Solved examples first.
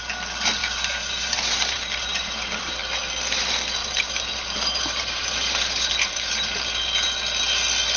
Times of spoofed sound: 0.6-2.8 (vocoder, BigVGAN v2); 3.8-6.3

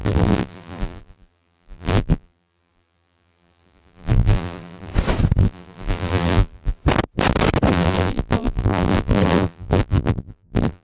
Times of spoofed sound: 0.0-4.9 (vocoder, BigVGAN v2); 5.4-6.8; 7.7-10.8

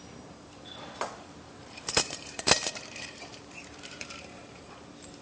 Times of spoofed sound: 1.6-4.7 (vocoder, BigVGAN v2)

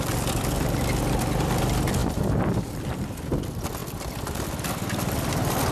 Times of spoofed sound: 3.8-5.3 (vocoder, BigVGAN v2)

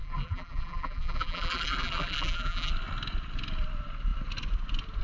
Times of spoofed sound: 0.0-2.7 (vocoder, BigVGAN v2)